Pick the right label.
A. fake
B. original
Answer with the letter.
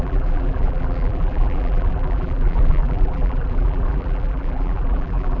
A